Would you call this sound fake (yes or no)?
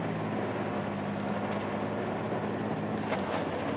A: no